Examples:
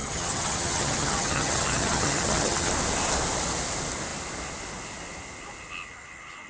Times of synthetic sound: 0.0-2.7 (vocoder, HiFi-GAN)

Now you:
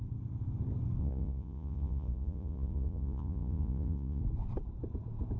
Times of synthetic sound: 1.0-4.2 (vocoder, Vocos)

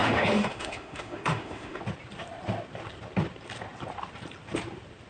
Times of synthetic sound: 0.0-1.8 (autoencoder, DAC-VAE)

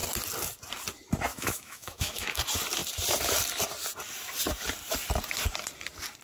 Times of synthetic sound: 1.3-2.4 (autoencoder, DAC-VAE)